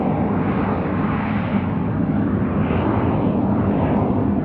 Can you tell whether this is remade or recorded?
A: recorded